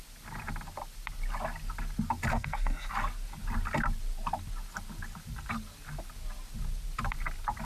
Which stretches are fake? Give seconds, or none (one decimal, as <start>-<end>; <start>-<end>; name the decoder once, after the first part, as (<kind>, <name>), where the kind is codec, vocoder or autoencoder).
2.3-2.9 (codec, SNAC)